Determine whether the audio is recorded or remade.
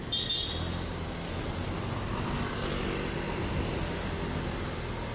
recorded